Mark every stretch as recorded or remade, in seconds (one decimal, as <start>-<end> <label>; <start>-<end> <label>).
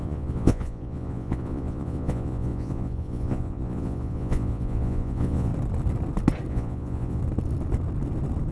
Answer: 0.0-5.5 remade; 5.5-6.5 recorded; 6.5-7.2 remade; 7.2-8.5 recorded